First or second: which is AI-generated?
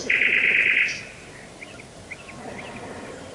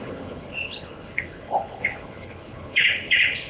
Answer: second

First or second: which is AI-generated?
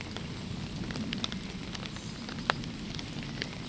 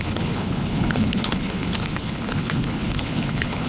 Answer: second